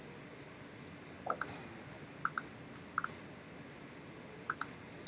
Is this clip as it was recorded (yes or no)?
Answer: yes